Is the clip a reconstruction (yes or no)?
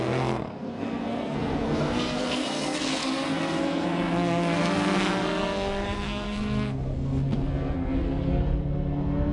yes